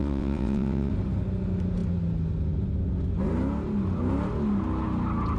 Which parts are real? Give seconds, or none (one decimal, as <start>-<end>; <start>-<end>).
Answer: 0.9-5.4